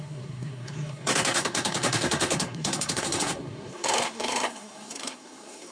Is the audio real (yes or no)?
no